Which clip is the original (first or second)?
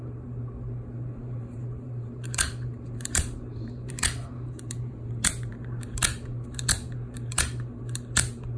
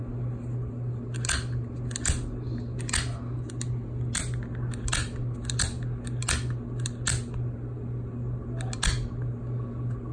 second